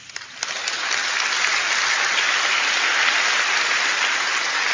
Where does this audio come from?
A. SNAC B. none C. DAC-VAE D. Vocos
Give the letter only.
B